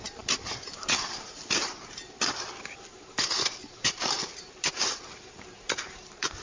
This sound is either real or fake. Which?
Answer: fake